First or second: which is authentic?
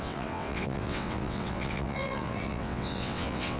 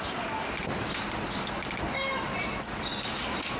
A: second